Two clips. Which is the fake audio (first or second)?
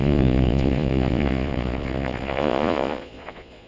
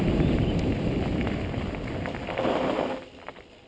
first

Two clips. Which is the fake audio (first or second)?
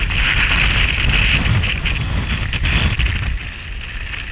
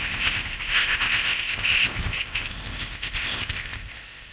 second